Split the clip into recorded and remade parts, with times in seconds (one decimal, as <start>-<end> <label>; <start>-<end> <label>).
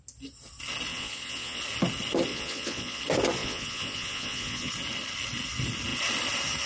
0.0-0.9 recorded; 0.9-1.6 remade; 1.6-2.3 recorded; 2.3-3.0 remade; 3.0-3.4 recorded; 3.4-4.7 remade; 4.7-6.7 recorded